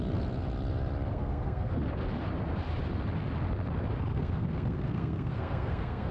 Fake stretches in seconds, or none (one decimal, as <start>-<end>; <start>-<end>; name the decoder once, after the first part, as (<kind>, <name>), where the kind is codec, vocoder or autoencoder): 1.1-1.7 (codec, SNAC); 4.1-6.1